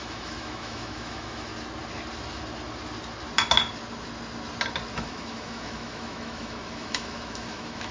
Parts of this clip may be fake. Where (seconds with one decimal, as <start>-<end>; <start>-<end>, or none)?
0.0-1.5; 4.9-7.9